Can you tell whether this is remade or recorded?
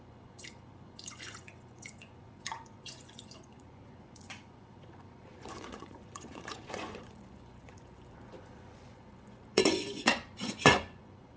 remade